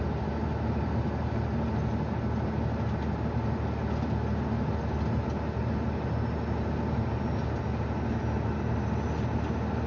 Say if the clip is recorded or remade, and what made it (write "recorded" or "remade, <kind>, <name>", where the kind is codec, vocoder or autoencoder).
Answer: recorded